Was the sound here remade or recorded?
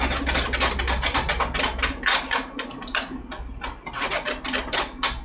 recorded